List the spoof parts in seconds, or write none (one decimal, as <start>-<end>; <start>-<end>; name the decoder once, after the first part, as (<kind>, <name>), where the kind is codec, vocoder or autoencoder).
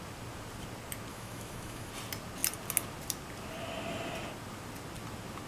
1.1-1.9 (autoencoder, DAC-VAE)